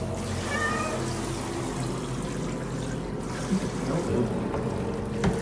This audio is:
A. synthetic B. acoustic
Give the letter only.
B